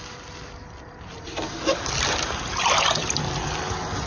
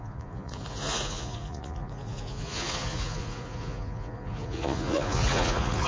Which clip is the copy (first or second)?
second